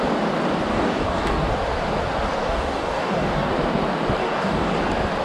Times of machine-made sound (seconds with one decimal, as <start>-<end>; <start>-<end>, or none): 0.7-1.5; 2.4-3.5; 4.2-4.7